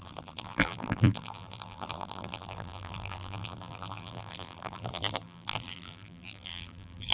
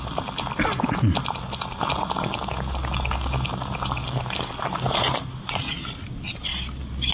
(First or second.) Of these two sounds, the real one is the second